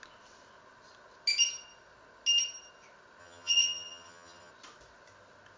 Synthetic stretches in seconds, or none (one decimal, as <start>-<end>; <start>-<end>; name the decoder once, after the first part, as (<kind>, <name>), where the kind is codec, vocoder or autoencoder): 3.2-4.5 (vocoder, HiFi-GAN)